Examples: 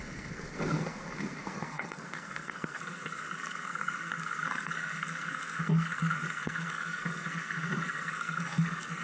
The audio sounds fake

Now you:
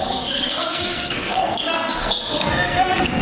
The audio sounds fake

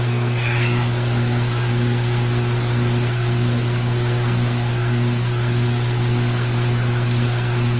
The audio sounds fake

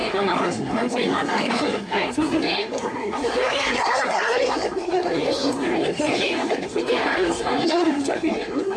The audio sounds fake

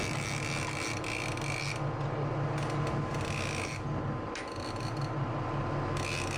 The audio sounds real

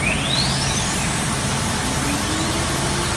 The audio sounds real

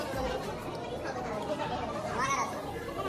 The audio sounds real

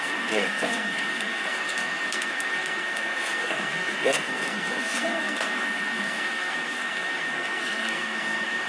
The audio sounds fake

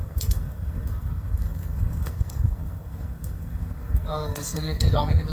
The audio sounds fake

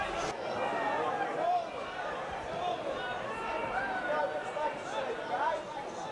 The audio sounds real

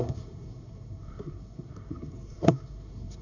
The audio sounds fake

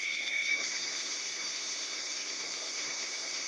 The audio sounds fake